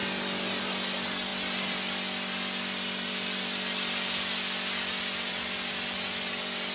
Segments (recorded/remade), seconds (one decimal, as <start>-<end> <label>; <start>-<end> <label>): 0.0-6.7 recorded